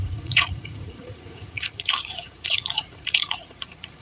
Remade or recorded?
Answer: remade